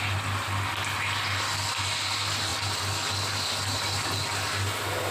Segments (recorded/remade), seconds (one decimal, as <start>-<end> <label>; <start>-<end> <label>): 0.0-5.1 recorded